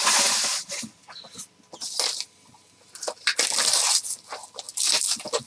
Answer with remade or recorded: recorded